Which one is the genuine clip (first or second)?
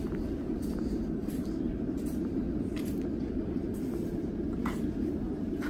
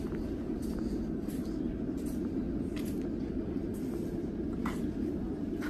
second